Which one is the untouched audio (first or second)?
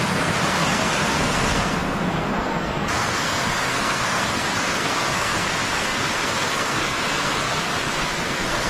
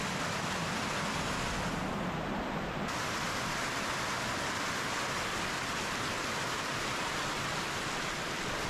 second